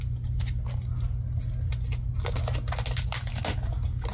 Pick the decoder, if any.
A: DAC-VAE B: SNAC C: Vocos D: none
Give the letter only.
D